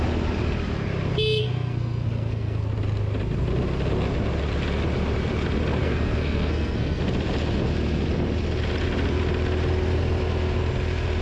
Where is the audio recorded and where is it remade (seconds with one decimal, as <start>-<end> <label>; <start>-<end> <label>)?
0.0-1.4 recorded; 1.4-2.7 remade; 2.7-5.8 recorded; 5.8-7.0 remade; 7.0-11.2 recorded